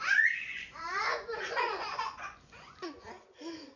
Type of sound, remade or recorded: remade